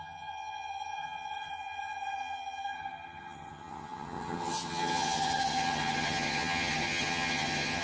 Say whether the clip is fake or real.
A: fake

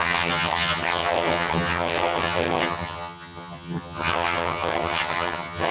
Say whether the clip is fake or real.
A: fake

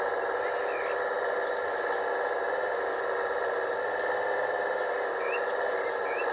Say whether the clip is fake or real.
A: real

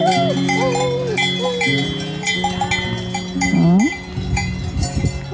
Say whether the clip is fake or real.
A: real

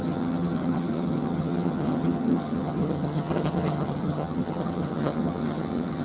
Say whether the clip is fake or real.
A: fake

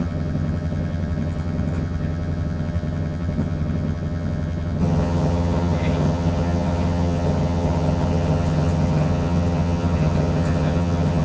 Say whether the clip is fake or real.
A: fake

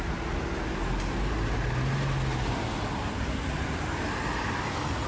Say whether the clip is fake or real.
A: real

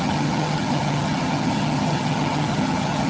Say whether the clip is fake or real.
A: fake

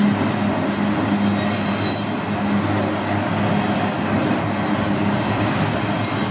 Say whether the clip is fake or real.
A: real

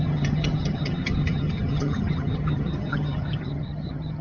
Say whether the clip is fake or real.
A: fake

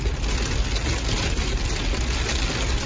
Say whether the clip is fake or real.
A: real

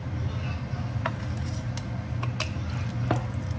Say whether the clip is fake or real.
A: real